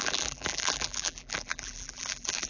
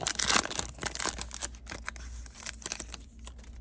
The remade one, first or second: first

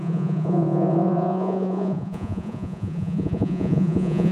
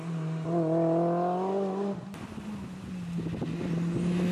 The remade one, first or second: first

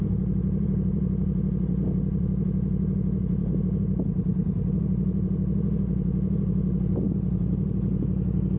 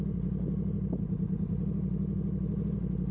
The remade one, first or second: first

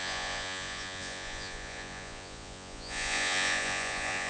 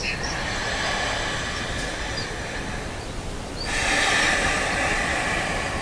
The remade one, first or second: first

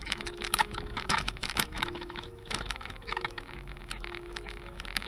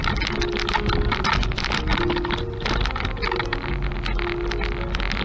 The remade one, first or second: first